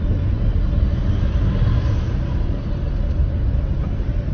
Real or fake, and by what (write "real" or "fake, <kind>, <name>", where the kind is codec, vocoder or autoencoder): real